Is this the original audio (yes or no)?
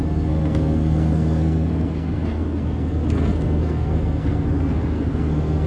no